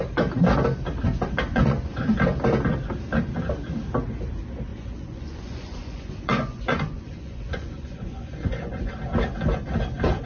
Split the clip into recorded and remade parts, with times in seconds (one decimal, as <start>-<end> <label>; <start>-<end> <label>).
0.0-1.5 recorded; 1.5-2.1 remade; 2.1-4.7 recorded; 4.7-8.9 remade; 8.9-10.3 recorded